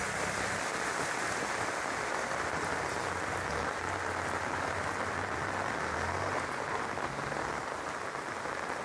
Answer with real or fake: real